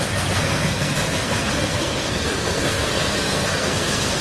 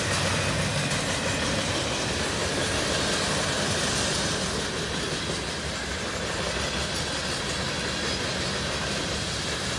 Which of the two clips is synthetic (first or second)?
first